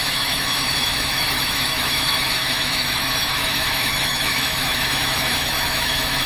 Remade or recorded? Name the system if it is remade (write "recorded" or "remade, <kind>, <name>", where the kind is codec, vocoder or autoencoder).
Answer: remade, autoencoder, DAC-VAE